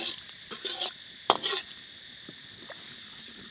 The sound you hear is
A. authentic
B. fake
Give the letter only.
A